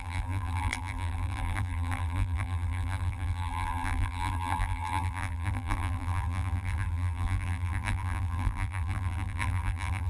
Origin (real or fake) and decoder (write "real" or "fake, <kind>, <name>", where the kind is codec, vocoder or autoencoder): fake, vocoder, BigVGAN v2